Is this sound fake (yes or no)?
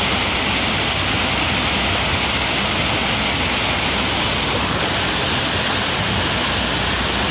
no